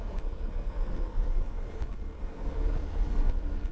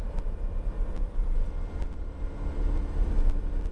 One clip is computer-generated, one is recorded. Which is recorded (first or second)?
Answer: second